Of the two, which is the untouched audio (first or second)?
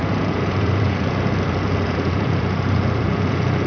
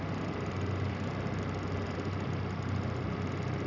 second